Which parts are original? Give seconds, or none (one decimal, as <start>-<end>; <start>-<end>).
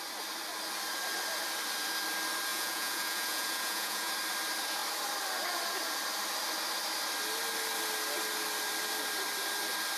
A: 0.0-2.5; 4.1-10.0